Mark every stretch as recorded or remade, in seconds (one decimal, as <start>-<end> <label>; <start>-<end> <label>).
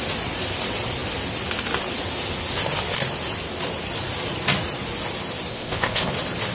0.0-5.5 recorded; 5.5-6.1 remade; 6.1-6.5 recorded